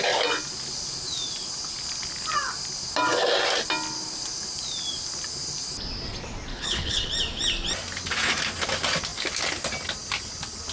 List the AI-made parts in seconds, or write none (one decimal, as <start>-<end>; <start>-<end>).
6.5-7.1